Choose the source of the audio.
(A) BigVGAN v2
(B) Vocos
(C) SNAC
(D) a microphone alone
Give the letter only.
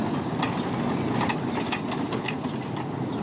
D